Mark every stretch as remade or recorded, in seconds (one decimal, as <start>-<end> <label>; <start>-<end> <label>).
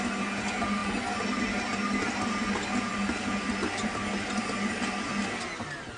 0.0-6.0 recorded